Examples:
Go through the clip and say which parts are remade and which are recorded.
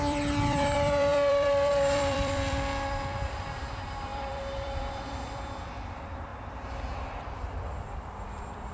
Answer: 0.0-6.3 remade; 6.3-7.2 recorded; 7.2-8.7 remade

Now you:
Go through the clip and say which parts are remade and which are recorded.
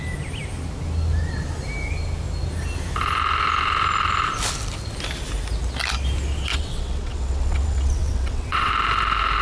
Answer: 0.0-6.5 recorded; 6.5-8.7 remade; 8.7-9.4 recorded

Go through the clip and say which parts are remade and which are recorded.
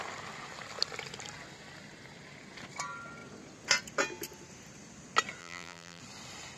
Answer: 0.0-5.4 recorded; 5.4-6.0 remade; 6.0-6.6 recorded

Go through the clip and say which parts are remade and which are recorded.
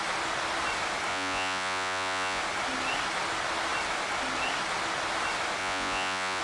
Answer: 0.0-1.1 recorded; 1.1-2.4 remade; 2.4-5.6 recorded; 5.6-6.4 remade